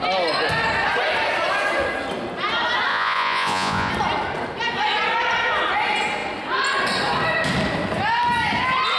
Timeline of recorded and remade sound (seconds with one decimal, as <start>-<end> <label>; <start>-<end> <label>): 0.0-2.9 recorded; 2.9-3.9 remade; 3.9-9.0 recorded